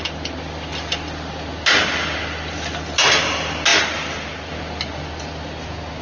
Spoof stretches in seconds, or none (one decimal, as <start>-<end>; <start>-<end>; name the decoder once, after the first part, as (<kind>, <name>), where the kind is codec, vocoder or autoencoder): none